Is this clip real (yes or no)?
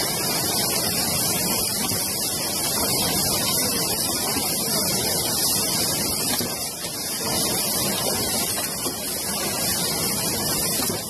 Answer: yes